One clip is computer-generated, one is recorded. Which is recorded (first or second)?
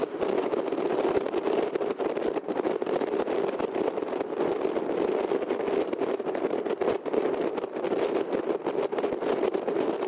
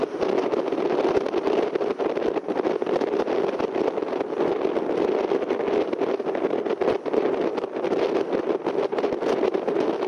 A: second